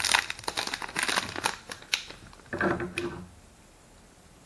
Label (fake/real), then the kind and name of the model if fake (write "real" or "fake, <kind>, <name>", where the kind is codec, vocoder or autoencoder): real